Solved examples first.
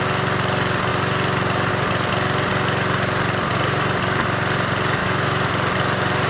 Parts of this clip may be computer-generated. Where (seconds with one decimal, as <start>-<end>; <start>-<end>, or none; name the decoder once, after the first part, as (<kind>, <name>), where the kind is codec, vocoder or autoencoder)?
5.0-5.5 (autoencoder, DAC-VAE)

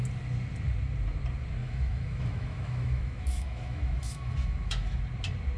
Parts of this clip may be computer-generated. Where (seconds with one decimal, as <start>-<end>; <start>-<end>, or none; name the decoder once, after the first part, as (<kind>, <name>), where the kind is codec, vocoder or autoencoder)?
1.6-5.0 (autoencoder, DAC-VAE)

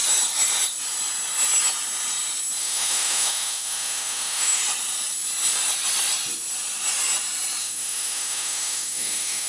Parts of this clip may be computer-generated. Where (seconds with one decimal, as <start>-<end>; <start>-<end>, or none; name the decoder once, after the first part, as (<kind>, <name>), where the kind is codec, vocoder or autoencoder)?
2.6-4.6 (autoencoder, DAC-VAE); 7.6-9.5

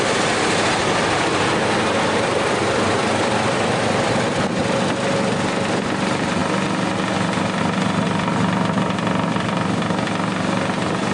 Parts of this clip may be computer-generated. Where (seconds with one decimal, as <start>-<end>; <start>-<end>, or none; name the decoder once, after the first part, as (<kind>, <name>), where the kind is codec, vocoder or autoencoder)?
none

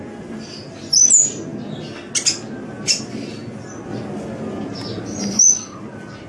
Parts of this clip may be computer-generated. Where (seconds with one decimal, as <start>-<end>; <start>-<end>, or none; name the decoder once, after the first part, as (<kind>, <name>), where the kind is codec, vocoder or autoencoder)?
none

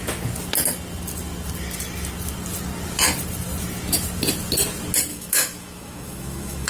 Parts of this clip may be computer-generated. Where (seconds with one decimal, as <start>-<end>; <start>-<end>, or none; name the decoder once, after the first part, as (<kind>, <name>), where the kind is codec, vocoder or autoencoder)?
5.1-6.7 (autoencoder, DAC-VAE)

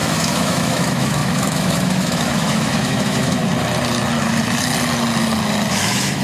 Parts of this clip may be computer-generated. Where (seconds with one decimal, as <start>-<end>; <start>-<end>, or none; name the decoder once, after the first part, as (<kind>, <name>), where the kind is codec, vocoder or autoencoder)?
0.0-3.4 (autoencoder, DAC-VAE); 5.7-6.2

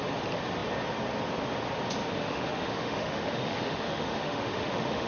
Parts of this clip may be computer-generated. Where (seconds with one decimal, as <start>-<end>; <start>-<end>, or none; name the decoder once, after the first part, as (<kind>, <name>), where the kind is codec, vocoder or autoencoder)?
2.0-5.1 (autoencoder, DAC-VAE)